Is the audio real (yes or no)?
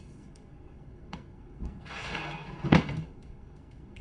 no